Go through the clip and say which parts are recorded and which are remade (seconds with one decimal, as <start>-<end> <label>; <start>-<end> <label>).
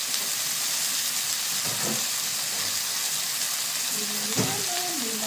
0.0-5.3 recorded